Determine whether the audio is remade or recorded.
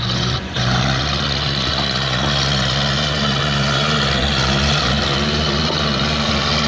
remade